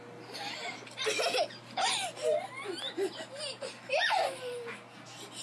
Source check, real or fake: real